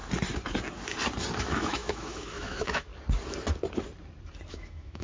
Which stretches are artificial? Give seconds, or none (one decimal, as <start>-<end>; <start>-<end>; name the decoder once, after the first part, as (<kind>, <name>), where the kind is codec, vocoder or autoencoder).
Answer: 1.4-2.9 (autoencoder, DAC-VAE); 4.5-5.0